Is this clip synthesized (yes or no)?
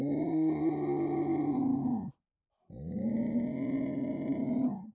no